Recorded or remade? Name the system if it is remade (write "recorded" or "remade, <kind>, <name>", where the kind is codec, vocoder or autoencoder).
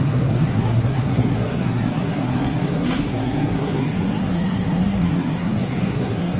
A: remade, codec, SNAC